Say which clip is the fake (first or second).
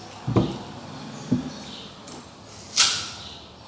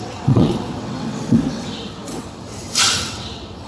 second